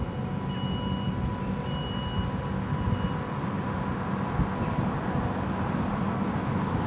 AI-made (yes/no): no